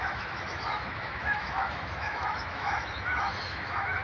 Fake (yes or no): yes